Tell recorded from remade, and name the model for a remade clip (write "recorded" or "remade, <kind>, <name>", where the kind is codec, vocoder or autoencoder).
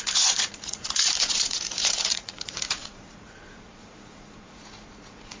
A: remade, vocoder, Vocos